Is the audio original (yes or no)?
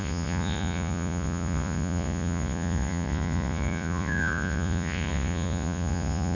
no